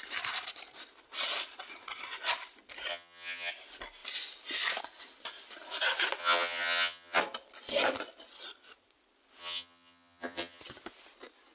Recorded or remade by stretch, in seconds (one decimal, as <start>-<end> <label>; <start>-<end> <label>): 0.0-2.9 recorded; 2.9-3.5 remade; 3.5-6.2 recorded; 6.2-7.2 remade; 7.2-9.4 recorded; 9.4-10.6 remade; 10.6-11.5 recorded